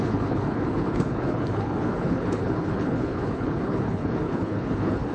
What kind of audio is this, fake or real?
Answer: fake